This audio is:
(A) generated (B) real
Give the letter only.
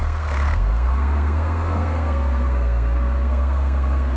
A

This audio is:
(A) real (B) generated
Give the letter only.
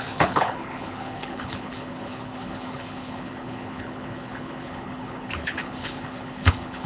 B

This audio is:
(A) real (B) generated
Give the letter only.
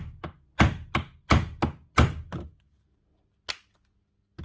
A